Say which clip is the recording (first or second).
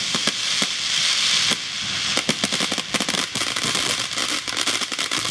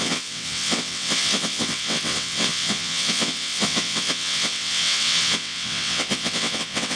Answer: first